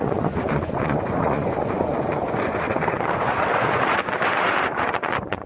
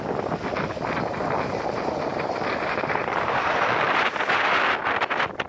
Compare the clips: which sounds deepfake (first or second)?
first